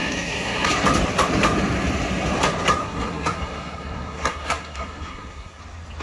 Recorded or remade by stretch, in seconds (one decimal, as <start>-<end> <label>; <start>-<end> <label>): 0.0-0.7 remade; 0.7-2.8 recorded; 2.8-5.6 remade; 5.6-6.0 recorded